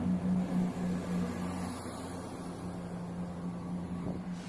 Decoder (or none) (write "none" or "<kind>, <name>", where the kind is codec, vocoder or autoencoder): none